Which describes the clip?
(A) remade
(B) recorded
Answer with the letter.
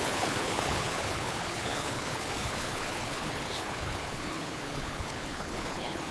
A